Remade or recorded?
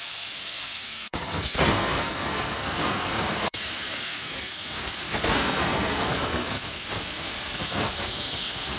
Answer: remade